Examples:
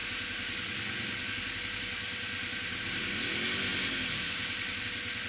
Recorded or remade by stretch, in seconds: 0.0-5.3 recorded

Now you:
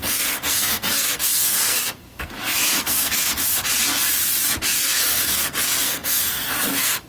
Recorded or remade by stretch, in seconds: 0.0-3.4 remade; 3.4-4.8 recorded; 4.8-7.1 remade

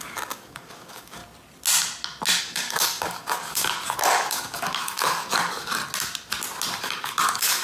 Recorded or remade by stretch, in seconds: 0.0-1.2 remade; 1.2-2.4 recorded; 2.4-5.8 remade; 5.8-6.8 recorded; 6.8-7.6 remade

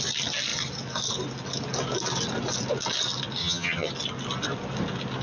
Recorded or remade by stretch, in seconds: 0.0-3.4 recorded; 3.4-3.9 remade; 3.9-5.2 recorded

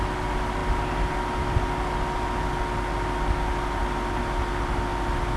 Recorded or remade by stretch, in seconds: 0.0-5.4 recorded

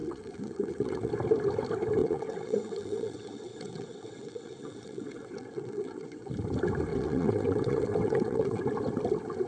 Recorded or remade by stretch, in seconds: 0.0-1.1 remade; 1.1-2.0 recorded; 2.0-6.3 remade; 6.3-6.9 recorded; 6.9-8.6 remade; 8.6-9.5 recorded

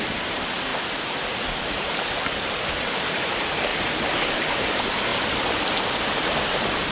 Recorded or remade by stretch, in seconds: 0.0-0.7 remade; 0.7-3.1 recorded; 3.1-3.7 remade; 3.7-4.5 recorded; 4.5-5.1 remade; 5.1-5.7 recorded; 5.7-6.9 remade